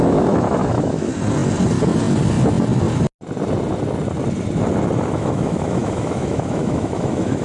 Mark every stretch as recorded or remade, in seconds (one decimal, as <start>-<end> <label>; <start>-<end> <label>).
0.0-1.1 remade; 1.1-5.1 recorded; 5.1-7.4 remade